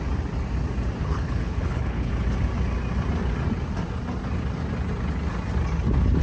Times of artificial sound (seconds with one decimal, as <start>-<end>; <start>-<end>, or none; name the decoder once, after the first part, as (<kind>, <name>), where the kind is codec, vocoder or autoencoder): 1.0-2.1 (codec, HILCodec)